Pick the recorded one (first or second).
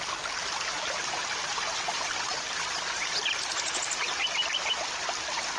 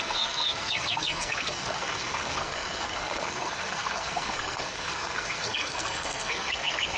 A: first